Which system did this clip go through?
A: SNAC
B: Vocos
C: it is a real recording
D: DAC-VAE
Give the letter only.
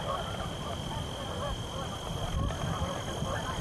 C